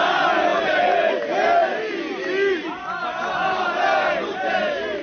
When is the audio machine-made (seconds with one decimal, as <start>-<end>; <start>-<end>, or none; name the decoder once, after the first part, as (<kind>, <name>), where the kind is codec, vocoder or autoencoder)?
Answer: 0.5-1.1 (vocoder, BigVGAN v2)